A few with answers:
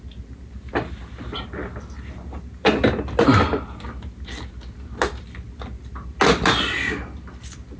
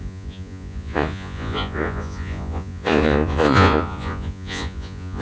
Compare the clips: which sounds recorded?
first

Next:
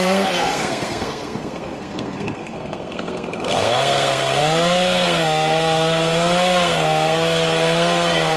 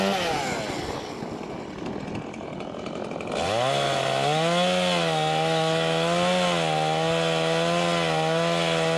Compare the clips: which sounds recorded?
second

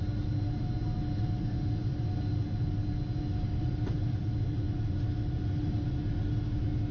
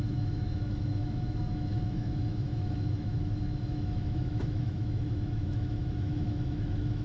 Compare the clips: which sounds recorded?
first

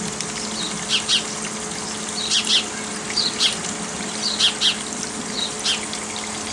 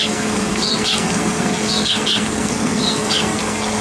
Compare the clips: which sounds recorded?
first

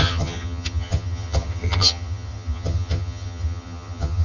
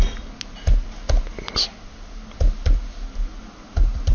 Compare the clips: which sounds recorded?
second